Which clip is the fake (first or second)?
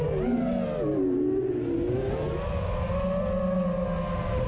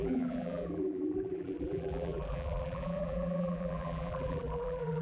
second